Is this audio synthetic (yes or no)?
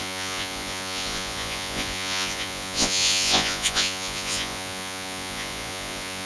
yes